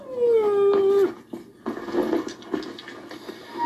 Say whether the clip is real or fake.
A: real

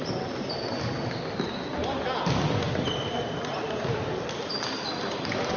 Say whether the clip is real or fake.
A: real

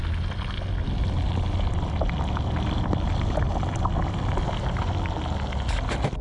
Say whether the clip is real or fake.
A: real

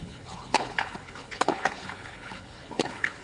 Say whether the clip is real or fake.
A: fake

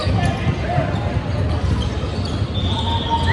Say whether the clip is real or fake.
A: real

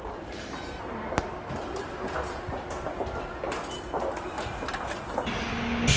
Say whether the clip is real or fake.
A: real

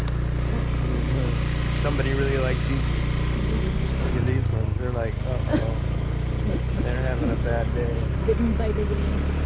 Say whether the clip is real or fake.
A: real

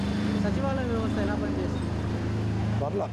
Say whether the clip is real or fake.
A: real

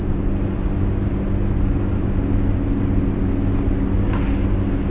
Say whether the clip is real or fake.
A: real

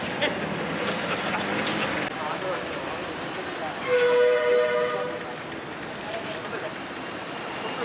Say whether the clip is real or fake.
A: real